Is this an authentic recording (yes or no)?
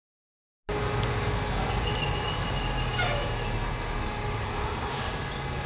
yes